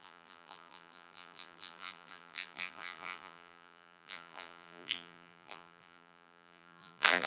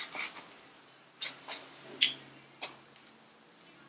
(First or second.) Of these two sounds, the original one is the second